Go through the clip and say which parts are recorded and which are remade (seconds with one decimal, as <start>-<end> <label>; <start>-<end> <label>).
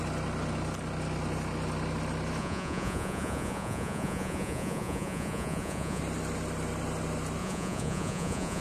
0.0-2.4 recorded; 2.4-6.0 remade; 6.0-7.4 recorded; 7.4-8.6 remade